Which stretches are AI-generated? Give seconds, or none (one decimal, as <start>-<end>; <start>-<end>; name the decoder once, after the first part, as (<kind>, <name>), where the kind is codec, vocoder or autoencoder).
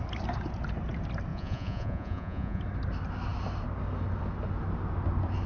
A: 1.3-2.6 (vocoder, Vocos)